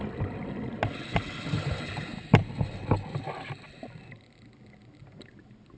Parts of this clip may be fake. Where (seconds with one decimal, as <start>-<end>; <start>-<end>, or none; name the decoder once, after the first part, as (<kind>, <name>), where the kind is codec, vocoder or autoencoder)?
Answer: none